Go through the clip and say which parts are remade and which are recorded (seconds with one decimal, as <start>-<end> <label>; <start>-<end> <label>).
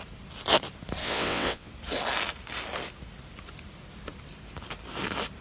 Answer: 0.0-1.0 recorded; 1.0-1.7 remade; 1.7-5.4 recorded